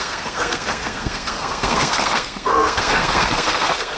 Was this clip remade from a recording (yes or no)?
yes